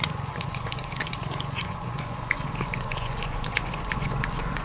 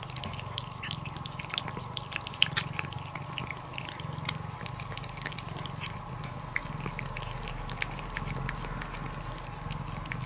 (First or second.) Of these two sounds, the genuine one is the second